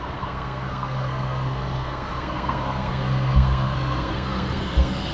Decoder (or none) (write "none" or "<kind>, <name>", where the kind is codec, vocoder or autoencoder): codec, SNAC